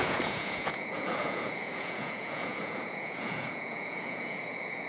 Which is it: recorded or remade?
remade